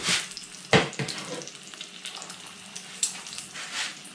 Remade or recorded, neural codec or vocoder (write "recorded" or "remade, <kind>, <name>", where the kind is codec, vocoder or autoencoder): recorded